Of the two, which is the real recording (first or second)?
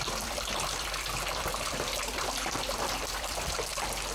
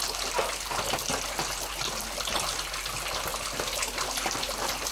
second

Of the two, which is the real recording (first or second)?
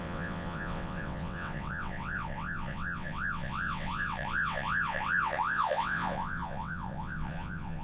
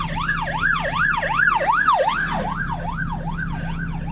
second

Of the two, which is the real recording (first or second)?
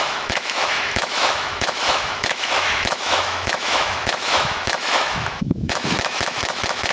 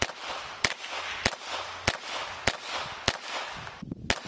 second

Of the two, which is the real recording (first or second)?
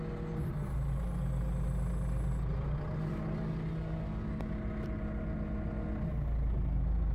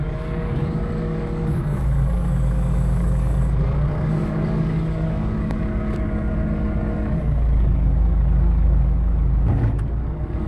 first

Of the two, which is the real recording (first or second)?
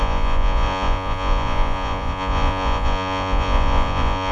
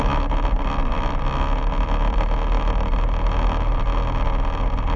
second